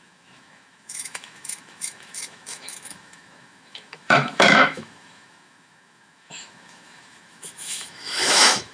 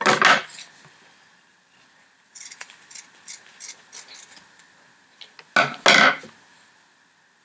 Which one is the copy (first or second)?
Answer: first